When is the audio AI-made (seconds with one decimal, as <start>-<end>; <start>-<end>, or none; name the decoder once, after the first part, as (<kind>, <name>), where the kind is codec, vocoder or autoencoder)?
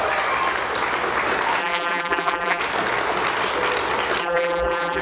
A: 1.6-2.6 (vocoder, BigVGAN v2); 4.2-5.0